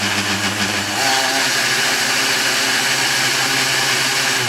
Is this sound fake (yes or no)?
no